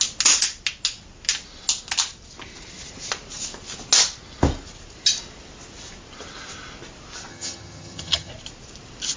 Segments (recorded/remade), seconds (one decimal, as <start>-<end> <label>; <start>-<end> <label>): 0.0-7.3 recorded; 7.3-8.3 remade; 8.3-9.2 recorded